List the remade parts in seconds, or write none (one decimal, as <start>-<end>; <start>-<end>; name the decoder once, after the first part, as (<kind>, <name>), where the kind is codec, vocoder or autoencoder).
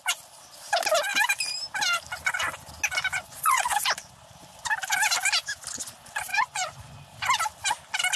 3.1-3.8 (vocoder, Vocos); 6.3-7.0